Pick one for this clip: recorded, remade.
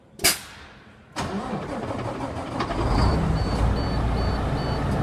recorded